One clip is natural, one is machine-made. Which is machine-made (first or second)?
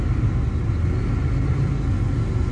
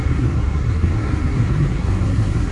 second